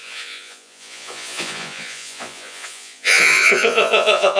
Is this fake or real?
fake